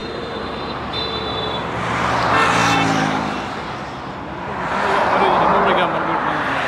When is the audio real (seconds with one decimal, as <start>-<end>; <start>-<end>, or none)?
2.2-6.7